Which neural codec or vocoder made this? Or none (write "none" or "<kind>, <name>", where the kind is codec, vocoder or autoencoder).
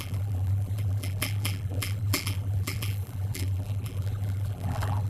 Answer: vocoder, BigVGAN v2